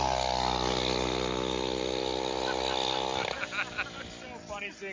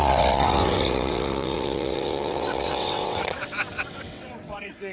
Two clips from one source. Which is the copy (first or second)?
second